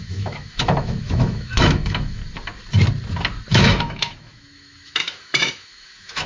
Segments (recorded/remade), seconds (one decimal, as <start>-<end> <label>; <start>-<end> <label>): 0.0-2.2 remade; 2.2-3.5 recorded; 3.5-6.3 remade